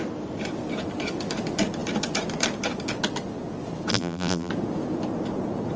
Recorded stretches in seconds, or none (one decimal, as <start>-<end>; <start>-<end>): 0.0-3.9; 4.5-5.8